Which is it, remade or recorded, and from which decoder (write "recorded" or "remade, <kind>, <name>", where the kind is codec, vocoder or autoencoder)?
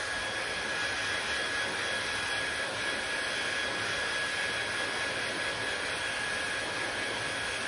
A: recorded